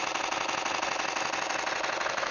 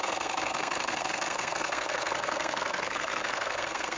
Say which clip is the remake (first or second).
second